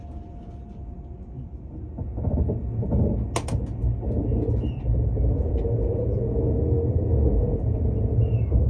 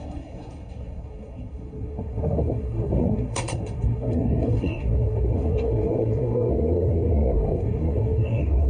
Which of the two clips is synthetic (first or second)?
second